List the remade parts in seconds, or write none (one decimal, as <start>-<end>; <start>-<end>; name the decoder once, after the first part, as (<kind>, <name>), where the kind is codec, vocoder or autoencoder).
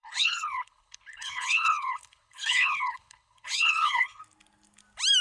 0.0-4.2 (codec, HILCodec)